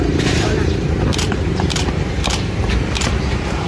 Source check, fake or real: fake